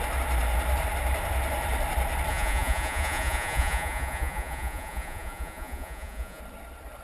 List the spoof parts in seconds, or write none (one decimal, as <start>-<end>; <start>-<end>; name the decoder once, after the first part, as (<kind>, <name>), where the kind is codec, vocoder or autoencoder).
2.3-6.4 (vocoder, Vocos)